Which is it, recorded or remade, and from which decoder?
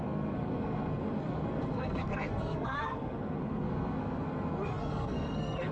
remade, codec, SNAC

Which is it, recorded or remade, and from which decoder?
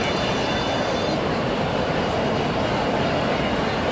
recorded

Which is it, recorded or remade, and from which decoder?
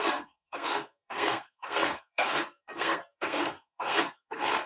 remade, codec, SNAC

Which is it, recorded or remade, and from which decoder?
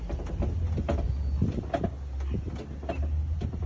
recorded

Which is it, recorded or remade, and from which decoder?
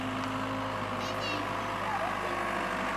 recorded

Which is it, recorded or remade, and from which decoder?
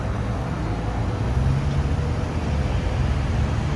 recorded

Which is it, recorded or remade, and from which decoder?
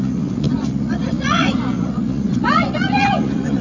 remade, vocoder, Vocos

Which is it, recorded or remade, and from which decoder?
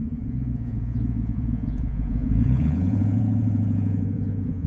remade, vocoder, Vocos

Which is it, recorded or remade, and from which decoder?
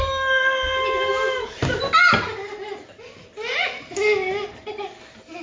recorded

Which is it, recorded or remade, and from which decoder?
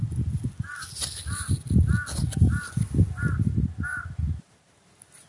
recorded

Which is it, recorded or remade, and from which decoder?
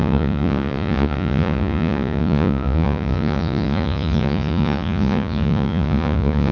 remade, vocoder, Vocos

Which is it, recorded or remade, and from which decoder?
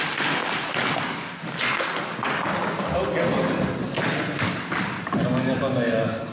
recorded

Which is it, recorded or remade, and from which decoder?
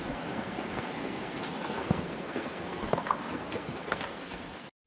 remade, codec, SNAC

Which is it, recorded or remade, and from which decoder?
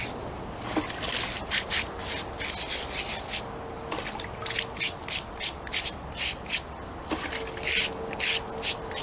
recorded